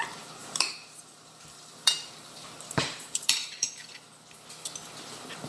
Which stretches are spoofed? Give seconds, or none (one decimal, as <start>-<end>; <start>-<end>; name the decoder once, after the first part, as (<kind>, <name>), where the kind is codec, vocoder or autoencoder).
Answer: 0.4-3.7 (vocoder, BigVGAN v2)